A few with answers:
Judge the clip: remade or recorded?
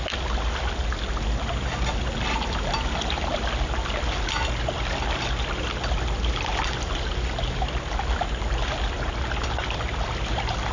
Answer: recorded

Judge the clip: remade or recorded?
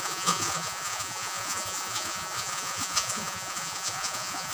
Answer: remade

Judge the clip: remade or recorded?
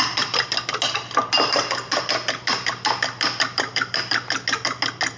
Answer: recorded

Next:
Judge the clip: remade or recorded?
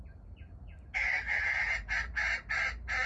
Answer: recorded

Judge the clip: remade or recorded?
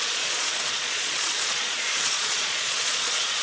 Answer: remade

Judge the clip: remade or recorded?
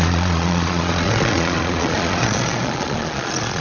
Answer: remade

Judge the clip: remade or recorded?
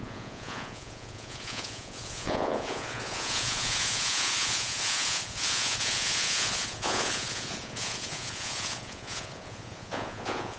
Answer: remade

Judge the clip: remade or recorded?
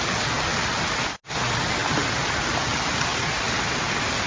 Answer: recorded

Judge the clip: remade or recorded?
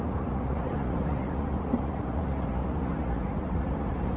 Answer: remade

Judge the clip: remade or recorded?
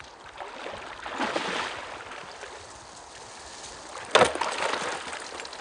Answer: recorded